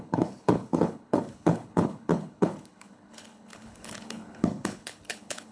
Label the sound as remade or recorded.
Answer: remade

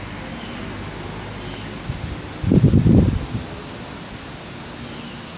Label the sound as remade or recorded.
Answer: recorded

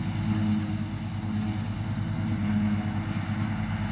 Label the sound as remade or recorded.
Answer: recorded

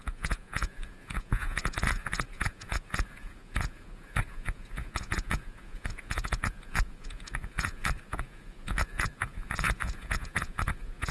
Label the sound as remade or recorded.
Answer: remade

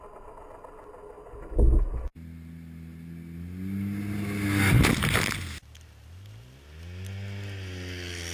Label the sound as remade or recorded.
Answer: recorded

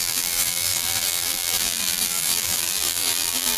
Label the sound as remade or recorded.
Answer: remade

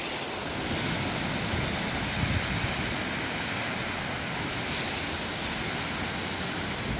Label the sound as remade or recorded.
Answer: recorded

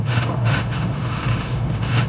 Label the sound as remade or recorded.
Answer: remade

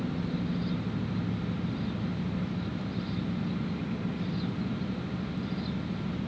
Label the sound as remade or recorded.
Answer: recorded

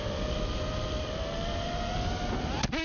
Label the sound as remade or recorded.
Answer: recorded